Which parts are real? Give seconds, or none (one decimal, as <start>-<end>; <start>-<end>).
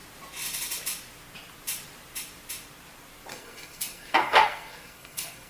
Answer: 0.0-3.3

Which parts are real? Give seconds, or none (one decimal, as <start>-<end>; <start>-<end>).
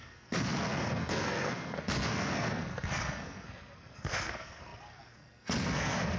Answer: none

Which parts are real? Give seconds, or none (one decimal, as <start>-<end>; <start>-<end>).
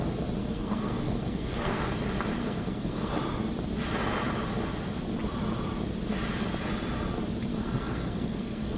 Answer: 0.0-0.4; 1.8-2.4; 3.1-7.5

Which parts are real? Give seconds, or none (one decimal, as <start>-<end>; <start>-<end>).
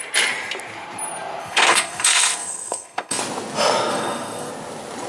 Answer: 0.0-1.4; 3.2-3.9; 4.5-5.1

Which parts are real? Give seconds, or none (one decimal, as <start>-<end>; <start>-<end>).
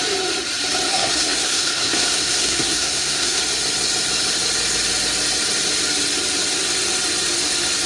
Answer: 0.0-0.9; 3.4-7.9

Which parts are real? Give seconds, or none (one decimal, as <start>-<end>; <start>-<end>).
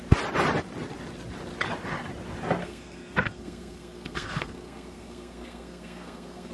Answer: 0.0-2.6